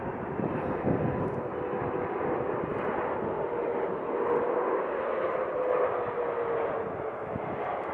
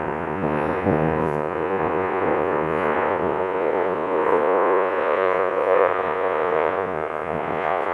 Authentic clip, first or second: first